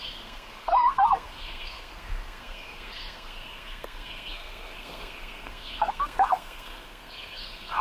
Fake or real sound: fake